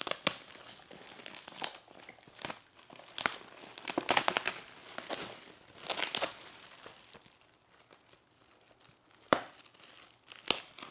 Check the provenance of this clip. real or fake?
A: real